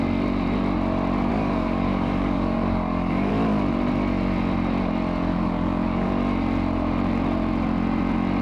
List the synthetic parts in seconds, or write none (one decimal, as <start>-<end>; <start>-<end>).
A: 1.3-3.3; 5.3-6.1